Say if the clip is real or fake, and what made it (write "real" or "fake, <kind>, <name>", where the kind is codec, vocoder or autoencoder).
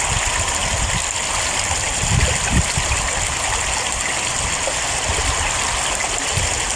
real